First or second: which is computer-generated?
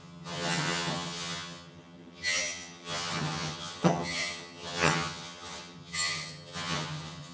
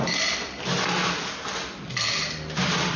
first